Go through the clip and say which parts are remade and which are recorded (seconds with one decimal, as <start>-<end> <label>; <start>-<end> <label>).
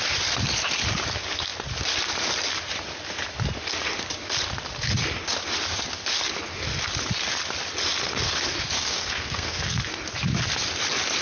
0.0-8.8 recorded; 8.8-9.8 remade; 9.8-11.2 recorded